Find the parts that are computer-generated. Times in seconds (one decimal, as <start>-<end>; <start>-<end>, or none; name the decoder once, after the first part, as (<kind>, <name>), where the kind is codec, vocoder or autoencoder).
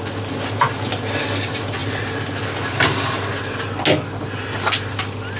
none